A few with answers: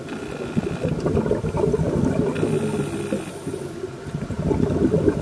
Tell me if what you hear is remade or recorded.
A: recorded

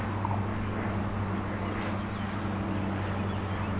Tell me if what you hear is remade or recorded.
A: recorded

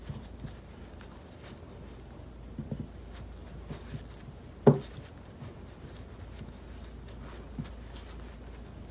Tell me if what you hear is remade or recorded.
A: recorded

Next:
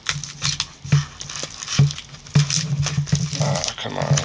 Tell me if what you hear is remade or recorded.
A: recorded